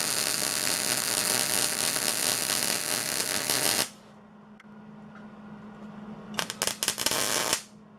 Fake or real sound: real